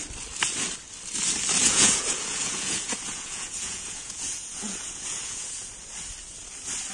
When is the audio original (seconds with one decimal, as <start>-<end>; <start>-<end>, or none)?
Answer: 0.0-1.6; 5.7-6.9